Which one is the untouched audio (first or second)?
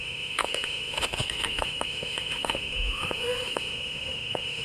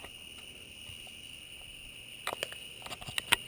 second